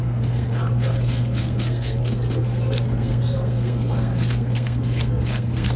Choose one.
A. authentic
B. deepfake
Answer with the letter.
B